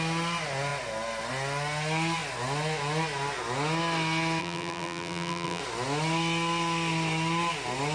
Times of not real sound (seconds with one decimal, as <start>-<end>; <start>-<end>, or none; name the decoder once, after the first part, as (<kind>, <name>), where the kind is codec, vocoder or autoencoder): 4.4-5.6 (vocoder, BigVGAN v2)